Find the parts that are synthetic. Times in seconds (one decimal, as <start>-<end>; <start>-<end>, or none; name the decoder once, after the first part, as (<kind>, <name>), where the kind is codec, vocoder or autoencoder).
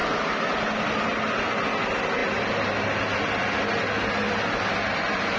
none